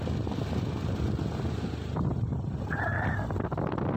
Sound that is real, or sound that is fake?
real